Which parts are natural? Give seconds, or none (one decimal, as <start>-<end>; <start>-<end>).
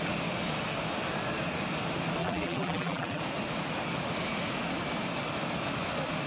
0.0-2.2; 3.2-6.3